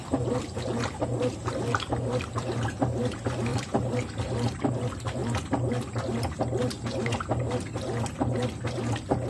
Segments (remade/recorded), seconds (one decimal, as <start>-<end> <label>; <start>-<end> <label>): 0.0-0.7 remade; 0.7-3.5 recorded; 3.5-4.7 remade; 4.7-9.3 recorded